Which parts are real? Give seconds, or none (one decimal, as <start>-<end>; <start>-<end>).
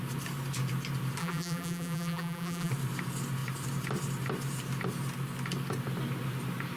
0.0-1.2; 2.7-6.8